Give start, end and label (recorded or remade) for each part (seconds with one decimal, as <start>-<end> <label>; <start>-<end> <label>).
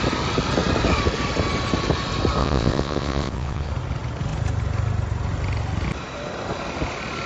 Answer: 0.0-2.4 recorded; 2.4-3.7 remade; 3.7-7.3 recorded